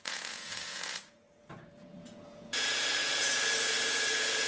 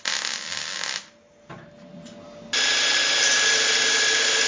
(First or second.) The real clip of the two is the second